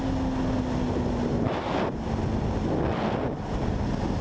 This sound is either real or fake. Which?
real